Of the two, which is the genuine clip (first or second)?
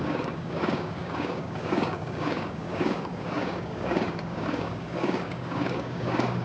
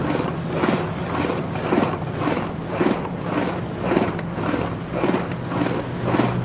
second